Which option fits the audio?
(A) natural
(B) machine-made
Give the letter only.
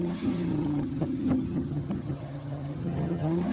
B